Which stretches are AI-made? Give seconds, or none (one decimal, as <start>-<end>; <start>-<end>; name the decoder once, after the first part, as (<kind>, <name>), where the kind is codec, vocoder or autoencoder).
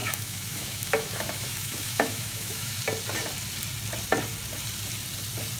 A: 0.0-2.8 (autoencoder, DAC-VAE)